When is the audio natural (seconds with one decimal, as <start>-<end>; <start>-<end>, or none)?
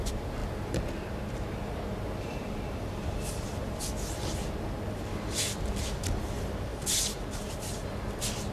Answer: 0.0-8.5